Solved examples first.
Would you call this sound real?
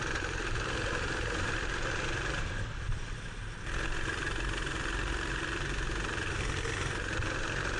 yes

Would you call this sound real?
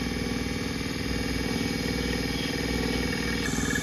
yes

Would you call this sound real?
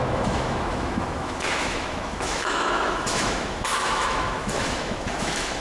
no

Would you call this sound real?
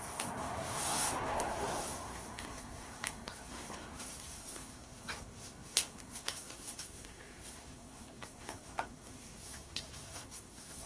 no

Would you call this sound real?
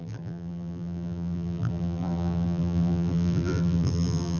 no